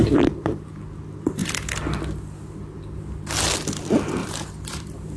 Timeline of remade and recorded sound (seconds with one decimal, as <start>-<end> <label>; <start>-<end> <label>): 0.0-0.7 remade; 0.7-4.2 recorded; 4.2-5.2 remade